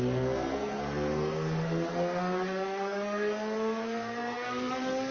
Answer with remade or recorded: remade